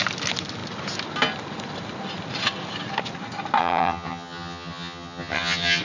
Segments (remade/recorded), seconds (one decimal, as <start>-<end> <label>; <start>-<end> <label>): 0.0-3.6 recorded; 3.6-5.8 remade